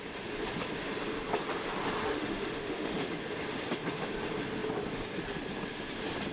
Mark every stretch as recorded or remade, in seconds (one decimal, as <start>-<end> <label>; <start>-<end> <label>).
0.0-2.0 recorded; 2.0-3.1 remade; 3.1-6.3 recorded